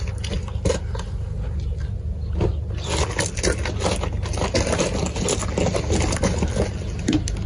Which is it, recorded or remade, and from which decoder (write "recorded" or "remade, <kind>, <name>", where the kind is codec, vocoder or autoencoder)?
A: recorded